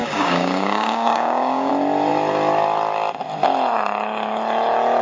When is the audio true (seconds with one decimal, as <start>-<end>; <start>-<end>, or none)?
1.7-5.0